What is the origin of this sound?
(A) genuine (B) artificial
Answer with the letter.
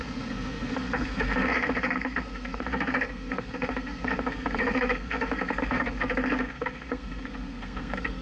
B